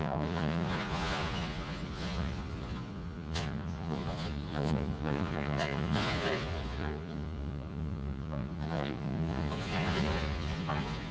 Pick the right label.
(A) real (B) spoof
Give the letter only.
B